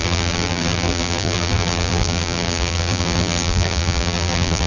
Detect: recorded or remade remade